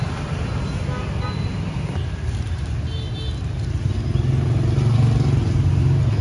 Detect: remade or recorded recorded